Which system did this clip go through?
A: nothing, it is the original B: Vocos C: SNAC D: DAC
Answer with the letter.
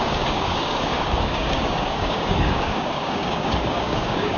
D